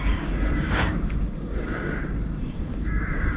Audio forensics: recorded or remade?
remade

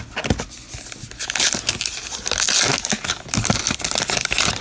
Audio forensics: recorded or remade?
recorded